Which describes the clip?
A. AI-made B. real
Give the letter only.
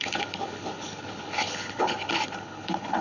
A